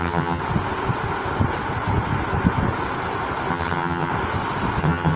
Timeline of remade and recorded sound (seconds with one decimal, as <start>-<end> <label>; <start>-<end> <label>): 0.0-0.4 remade; 0.4-3.5 recorded; 3.5-4.1 remade; 4.1-4.8 recorded; 4.8-5.2 remade